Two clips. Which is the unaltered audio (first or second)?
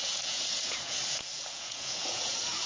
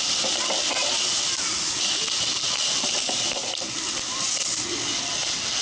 second